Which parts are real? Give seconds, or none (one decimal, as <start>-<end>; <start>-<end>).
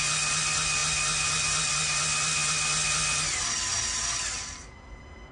0.0-5.3